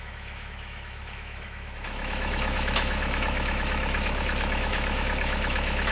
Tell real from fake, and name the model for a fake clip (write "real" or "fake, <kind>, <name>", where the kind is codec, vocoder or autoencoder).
fake, autoencoder, DAC-VAE